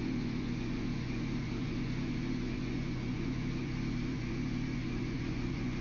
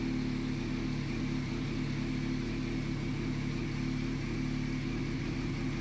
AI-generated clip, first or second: first